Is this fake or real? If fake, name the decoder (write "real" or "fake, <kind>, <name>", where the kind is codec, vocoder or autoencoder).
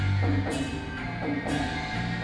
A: real